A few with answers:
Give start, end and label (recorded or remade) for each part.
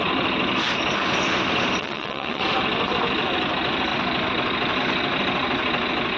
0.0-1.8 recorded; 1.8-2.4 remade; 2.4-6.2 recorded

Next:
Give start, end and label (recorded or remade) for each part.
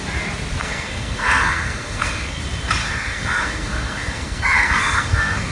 0.0-0.6 recorded; 0.6-2.4 remade; 2.4-2.8 recorded; 2.8-5.5 remade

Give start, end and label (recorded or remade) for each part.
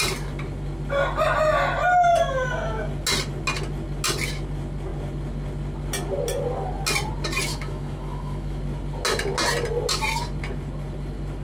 0.0-7.5 recorded; 7.5-8.6 remade; 8.6-11.4 recorded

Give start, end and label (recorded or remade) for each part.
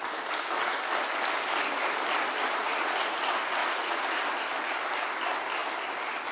0.0-2.6 recorded; 2.6-3.2 remade; 3.2-3.6 recorded; 3.6-4.2 remade; 4.2-6.3 recorded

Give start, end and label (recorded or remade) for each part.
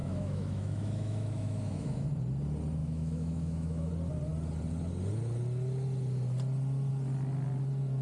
0.0-2.1 remade; 2.1-2.8 recorded; 2.8-3.9 remade; 3.9-8.0 recorded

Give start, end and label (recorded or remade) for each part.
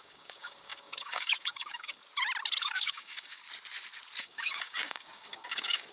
0.0-2.0 remade; 2.0-2.6 recorded; 2.6-3.4 remade; 3.4-4.2 recorded; 4.2-5.9 remade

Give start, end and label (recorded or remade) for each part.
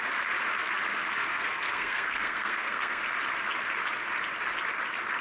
0.0-1.0 recorded; 1.0-3.0 remade; 3.0-5.2 recorded